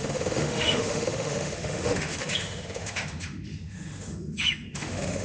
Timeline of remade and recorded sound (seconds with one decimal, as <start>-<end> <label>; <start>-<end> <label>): 0.0-5.2 remade